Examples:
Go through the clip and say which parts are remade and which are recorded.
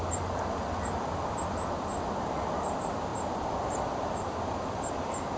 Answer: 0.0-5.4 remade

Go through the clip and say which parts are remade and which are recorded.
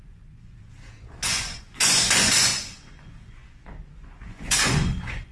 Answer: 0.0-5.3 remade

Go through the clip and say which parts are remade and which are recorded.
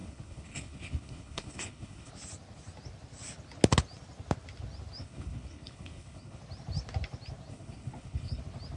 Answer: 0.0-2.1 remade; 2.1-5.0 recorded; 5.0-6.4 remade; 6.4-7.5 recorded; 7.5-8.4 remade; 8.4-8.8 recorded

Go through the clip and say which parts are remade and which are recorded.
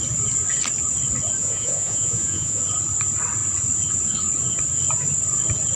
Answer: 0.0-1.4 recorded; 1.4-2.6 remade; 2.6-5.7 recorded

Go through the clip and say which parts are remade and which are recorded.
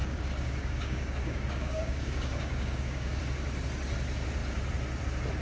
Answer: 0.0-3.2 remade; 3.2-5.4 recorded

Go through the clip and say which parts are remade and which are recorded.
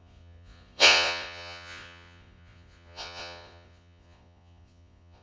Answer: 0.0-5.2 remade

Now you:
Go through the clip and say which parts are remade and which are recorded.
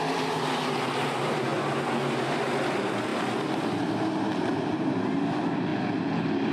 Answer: 0.0-3.1 recorded; 3.1-3.8 remade; 3.8-6.5 recorded